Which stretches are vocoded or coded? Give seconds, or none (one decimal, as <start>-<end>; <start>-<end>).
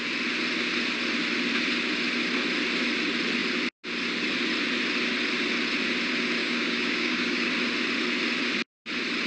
6.4-7.5